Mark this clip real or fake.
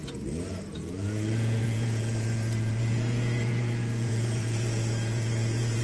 fake